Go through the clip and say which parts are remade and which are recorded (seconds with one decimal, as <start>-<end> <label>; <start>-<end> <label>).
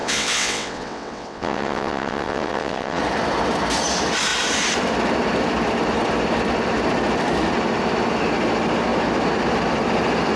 0.0-3.0 remade; 3.0-10.4 recorded